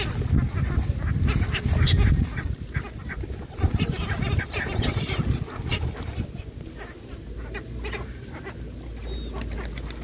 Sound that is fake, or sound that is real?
real